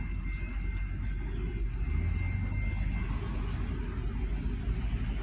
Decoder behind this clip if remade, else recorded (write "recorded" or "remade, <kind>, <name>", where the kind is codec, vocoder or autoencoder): recorded